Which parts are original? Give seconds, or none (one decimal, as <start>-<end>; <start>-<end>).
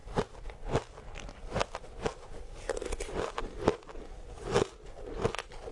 0.0-5.7